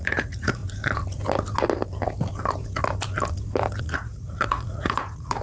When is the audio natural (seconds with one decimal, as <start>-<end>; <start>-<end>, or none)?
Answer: 0.6-3.8